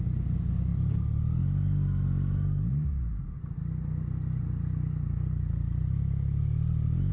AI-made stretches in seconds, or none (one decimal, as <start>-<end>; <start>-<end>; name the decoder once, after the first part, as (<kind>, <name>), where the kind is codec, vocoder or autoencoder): none